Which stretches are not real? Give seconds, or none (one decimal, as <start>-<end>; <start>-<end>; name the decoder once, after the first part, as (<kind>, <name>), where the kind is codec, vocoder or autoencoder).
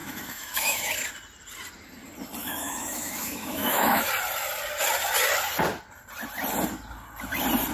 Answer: 0.0-0.9 (autoencoder, DAC-VAE); 2.4-4.1